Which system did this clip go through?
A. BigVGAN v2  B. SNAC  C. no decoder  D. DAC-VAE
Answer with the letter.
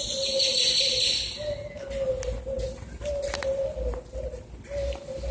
C